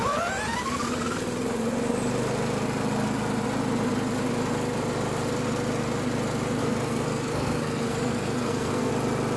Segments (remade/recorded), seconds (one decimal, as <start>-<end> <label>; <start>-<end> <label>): 0.0-6.6 recorded; 6.6-8.9 remade; 8.9-9.4 recorded